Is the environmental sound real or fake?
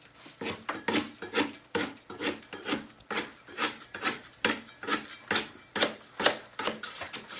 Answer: real